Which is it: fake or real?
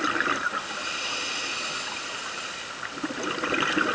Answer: real